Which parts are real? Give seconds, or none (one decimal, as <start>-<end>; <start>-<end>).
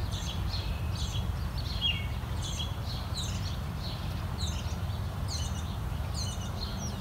0.0-7.0